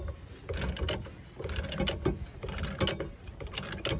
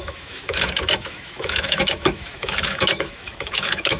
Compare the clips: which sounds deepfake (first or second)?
second